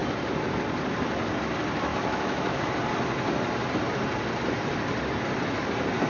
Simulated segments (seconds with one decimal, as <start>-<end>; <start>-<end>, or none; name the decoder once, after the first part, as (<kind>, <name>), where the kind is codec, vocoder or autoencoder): 1.9-2.7 (autoencoder, DAC-VAE)